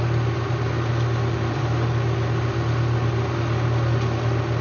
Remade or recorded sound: recorded